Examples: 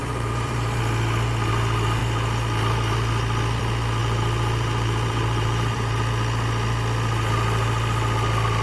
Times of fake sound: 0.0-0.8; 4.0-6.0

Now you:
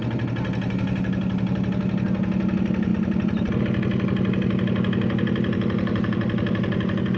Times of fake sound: none

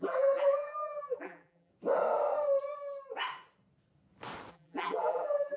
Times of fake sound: 0.0-1.7; 4.5-5.6

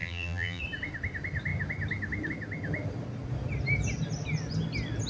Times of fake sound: 0.0-0.6

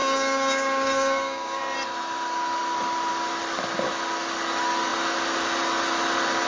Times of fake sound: 0.0-1.6

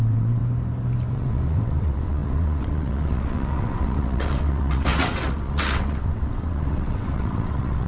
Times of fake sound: 0.0-0.4; 1.1-7.9